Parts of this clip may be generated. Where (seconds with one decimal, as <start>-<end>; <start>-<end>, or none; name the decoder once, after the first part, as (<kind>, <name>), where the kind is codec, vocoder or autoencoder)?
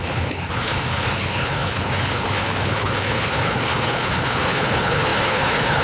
0.0-5.8 (codec, HILCodec)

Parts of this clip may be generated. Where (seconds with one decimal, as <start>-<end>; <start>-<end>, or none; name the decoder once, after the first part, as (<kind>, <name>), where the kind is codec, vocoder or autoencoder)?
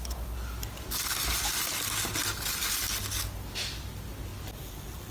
none